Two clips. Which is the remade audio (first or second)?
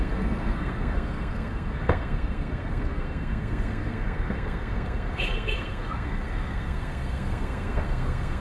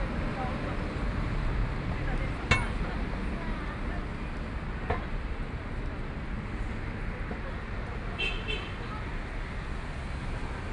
first